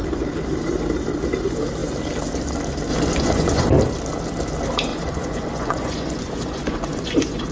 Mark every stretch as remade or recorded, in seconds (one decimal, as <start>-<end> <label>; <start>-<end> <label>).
0.0-2.9 recorded; 2.9-3.7 remade; 3.7-4.9 recorded; 4.9-7.5 remade

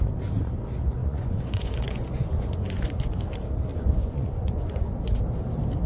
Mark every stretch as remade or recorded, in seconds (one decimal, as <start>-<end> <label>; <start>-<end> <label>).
0.0-1.0 recorded; 1.0-3.1 remade; 3.1-3.7 recorded; 3.7-5.2 remade; 5.2-5.9 recorded

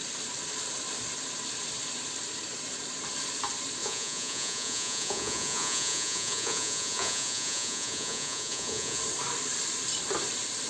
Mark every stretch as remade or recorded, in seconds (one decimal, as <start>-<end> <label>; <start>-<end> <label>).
0.0-3.8 recorded; 3.8-9.0 remade; 9.0-10.7 recorded